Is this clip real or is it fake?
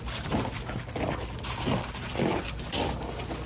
real